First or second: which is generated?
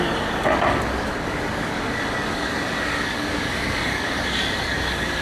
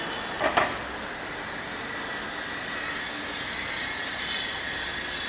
first